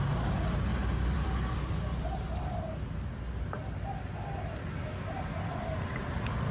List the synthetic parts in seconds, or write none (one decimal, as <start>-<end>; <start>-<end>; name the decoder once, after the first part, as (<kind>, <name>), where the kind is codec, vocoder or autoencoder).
0.7-1.7 (vocoder, BigVGAN v2)